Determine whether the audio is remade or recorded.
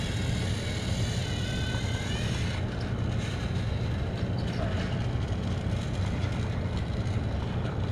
recorded